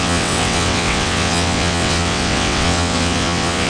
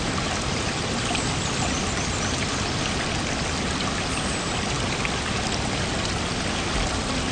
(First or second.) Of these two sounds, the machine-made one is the first